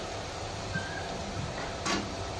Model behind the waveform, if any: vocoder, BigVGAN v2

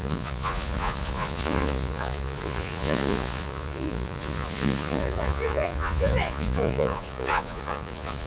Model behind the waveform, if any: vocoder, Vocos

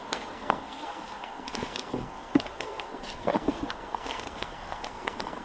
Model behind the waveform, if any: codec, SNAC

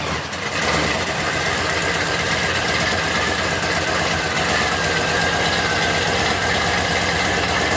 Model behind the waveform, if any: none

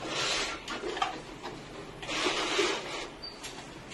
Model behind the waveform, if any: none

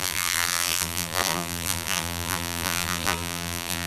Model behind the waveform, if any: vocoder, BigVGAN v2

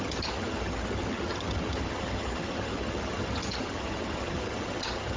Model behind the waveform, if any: vocoder, HiFi-GAN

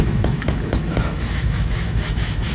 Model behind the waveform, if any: autoencoder, DAC-VAE